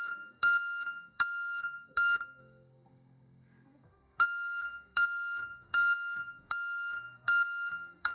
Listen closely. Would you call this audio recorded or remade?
remade